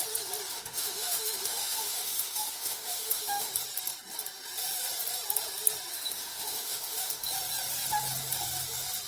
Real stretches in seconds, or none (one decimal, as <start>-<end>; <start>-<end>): 0.0-0.5; 3.5-5.9; 7.3-9.1